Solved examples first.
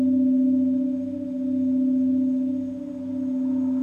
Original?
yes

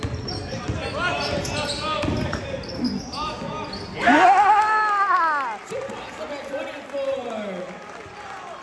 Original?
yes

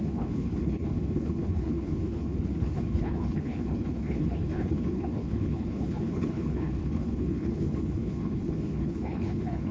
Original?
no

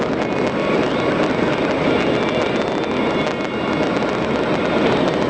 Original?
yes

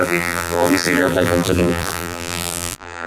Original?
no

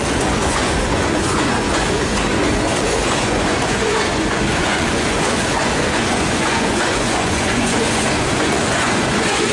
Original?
no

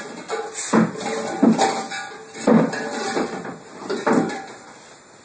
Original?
yes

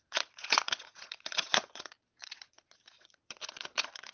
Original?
no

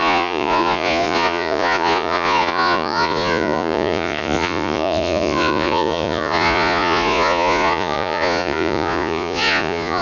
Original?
no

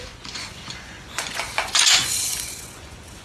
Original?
no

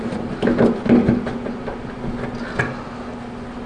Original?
yes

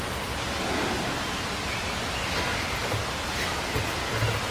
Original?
yes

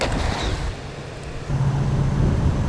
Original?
yes